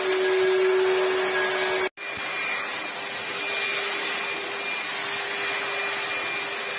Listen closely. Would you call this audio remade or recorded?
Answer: recorded